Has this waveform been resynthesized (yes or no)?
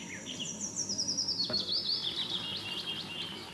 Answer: no